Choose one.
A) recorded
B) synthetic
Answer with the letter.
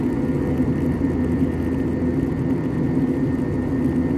A